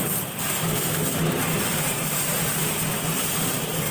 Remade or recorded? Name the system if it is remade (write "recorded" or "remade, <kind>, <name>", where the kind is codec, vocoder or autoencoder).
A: recorded